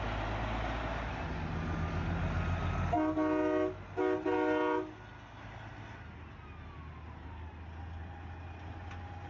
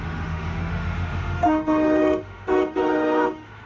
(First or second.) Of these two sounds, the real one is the first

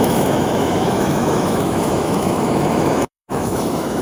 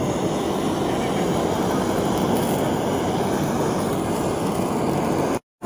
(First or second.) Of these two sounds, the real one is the second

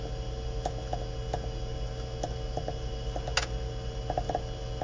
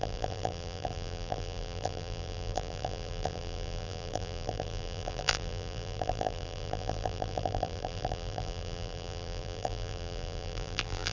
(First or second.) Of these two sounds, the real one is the first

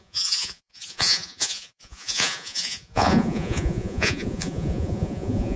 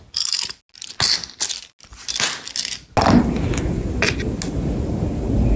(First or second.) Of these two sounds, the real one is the second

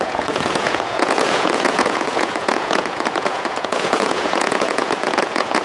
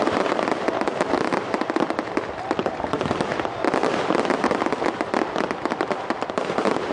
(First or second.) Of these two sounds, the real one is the second